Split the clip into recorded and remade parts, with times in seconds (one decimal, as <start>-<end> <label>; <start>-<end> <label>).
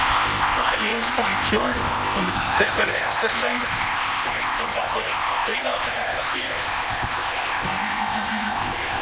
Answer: 0.0-9.0 remade